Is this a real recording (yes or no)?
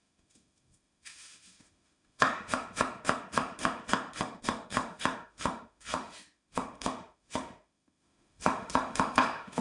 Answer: no